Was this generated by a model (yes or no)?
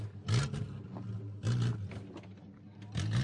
no